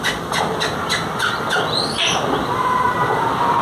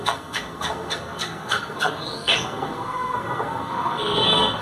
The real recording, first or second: first